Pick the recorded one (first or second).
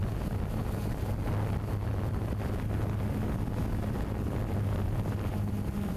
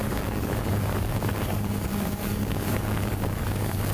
first